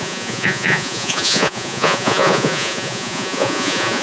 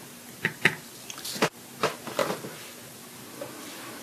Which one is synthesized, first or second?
first